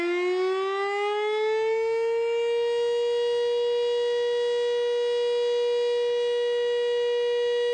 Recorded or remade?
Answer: recorded